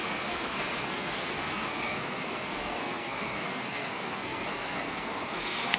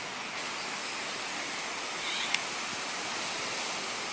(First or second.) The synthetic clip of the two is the first